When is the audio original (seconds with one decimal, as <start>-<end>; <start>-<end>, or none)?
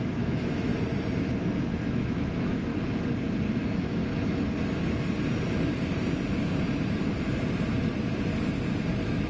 0.7-1.8; 2.7-3.5; 4.0-8.9